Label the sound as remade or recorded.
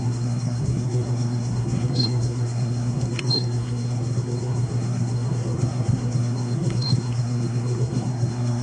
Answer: remade